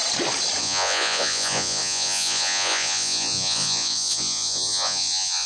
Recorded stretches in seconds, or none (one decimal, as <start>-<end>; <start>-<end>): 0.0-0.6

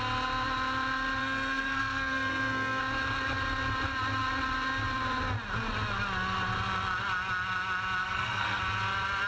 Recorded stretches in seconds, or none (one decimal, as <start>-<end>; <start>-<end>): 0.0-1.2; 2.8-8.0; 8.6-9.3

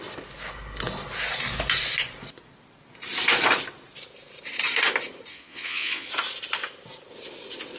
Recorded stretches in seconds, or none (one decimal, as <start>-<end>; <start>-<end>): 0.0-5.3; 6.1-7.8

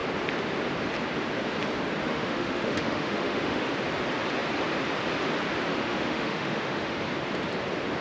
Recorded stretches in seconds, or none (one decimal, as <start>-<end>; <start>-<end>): 0.0-2.0; 3.7-5.7; 7.0-8.0

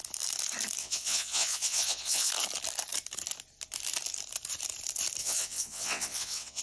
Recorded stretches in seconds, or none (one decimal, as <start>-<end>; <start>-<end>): 0.0-0.8; 2.3-5.2

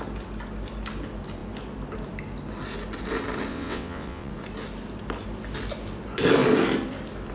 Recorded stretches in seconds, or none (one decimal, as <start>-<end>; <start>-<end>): 0.0-3.5; 4.3-7.3